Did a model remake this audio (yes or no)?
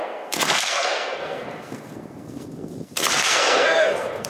yes